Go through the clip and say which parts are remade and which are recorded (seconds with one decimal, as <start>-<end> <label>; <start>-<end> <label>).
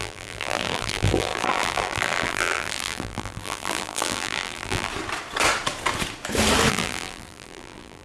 0.0-4.9 remade; 4.9-6.7 recorded; 6.7-8.0 remade